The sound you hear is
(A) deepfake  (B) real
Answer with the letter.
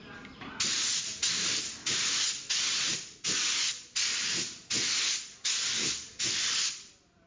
B